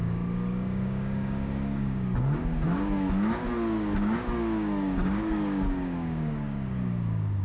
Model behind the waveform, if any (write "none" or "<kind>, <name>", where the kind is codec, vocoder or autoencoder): codec, DAC